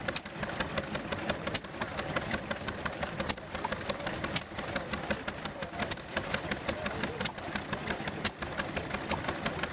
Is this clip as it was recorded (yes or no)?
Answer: no